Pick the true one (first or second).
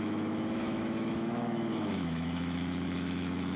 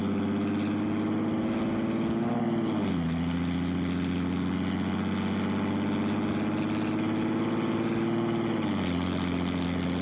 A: second